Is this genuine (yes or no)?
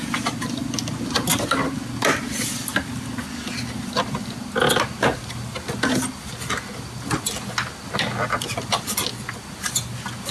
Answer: yes